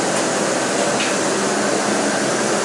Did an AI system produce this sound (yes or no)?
no